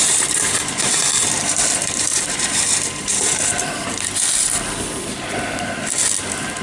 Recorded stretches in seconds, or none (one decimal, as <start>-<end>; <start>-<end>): 0.8-2.1; 3.5-6.6